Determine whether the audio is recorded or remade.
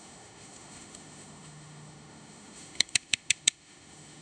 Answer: remade